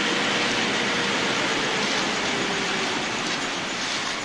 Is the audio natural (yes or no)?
yes